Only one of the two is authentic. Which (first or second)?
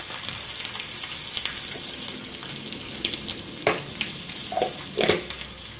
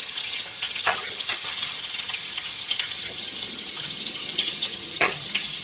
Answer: first